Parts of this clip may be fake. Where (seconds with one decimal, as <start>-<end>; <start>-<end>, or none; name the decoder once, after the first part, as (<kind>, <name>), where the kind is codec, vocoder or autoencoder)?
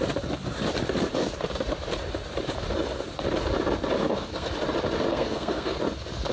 4.0-4.5 (codec, SNAC); 5.1-5.8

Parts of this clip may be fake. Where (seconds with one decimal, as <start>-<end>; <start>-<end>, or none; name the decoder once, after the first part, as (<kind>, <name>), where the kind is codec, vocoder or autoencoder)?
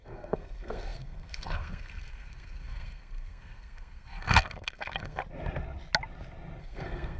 0.0-5.2 (codec, SNAC); 6.6-7.2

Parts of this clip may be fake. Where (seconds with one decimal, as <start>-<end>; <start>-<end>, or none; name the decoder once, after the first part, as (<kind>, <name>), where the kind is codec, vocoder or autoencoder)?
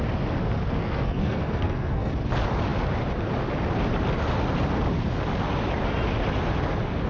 0.8-2.1 (codec, SNAC)